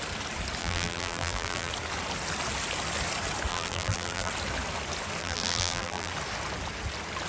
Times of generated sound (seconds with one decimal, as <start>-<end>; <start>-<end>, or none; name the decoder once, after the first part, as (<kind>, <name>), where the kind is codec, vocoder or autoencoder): 0.6-1.7 (vocoder, BigVGAN v2); 3.5-4.3; 5.2-6.1